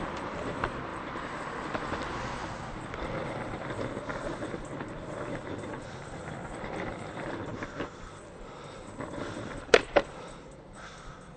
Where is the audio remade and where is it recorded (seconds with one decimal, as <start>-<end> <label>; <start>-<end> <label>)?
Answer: 0.0-0.9 remade; 0.9-4.5 recorded; 4.5-11.4 remade